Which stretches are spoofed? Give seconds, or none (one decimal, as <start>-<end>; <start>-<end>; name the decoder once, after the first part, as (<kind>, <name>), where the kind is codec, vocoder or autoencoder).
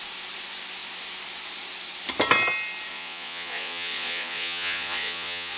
2.9-5.6 (vocoder, Vocos)